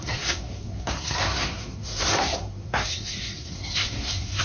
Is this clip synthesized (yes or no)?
yes